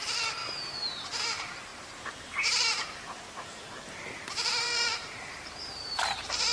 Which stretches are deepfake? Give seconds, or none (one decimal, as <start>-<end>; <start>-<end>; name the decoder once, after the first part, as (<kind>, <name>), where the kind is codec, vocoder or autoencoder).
0.0-0.4 (vocoder, BigVGAN v2); 1.2-6.5